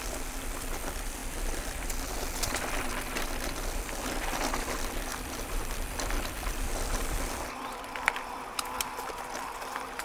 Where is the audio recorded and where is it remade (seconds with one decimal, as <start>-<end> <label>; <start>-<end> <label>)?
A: 0.0-5.1 recorded; 5.1-9.1 remade; 9.1-10.0 recorded